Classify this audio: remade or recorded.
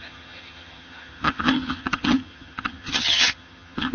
remade